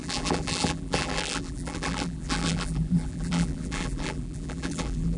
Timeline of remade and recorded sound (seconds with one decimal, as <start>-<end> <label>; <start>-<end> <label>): 0.0-5.2 remade